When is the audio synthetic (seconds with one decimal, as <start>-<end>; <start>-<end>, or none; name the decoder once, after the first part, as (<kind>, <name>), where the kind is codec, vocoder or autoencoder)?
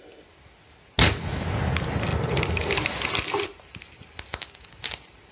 2.1-3.7 (vocoder, BigVGAN v2)